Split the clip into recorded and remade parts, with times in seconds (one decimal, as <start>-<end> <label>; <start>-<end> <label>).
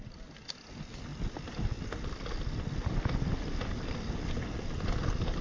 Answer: 0.0-5.4 recorded